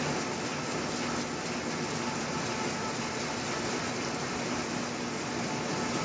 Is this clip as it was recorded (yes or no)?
yes